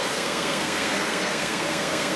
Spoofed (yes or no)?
yes